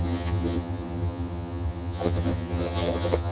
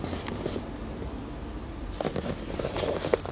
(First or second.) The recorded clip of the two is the second